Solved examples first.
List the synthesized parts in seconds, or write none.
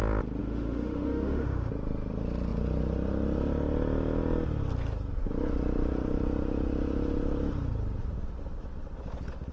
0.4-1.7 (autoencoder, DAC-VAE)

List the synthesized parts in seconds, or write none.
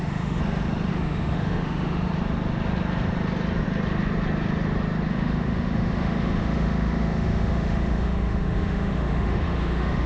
0.0-0.4 (autoencoder, DAC-VAE); 0.9-2.1; 5.1-10.1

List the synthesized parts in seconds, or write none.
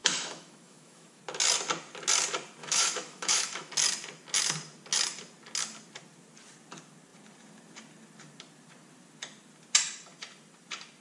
0.0-1.2 (autoencoder, DAC-VAE); 2.6-3.7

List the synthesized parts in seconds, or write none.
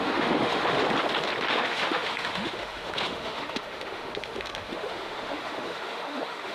0.0-0.8 (autoencoder, DAC-VAE); 1.5-6.5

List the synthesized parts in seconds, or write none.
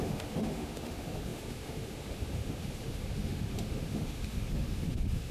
0.0-5.3 (autoencoder, DAC-VAE)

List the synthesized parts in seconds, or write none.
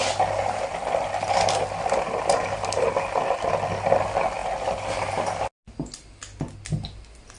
none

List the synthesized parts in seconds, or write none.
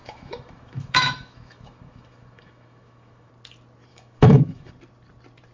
0.0-3.3 (autoencoder, DAC-VAE); 3.9-4.7